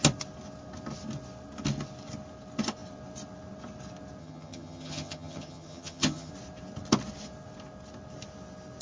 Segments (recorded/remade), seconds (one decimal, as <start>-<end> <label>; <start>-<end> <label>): 0.0-4.2 recorded; 4.2-6.3 remade; 6.3-8.8 recorded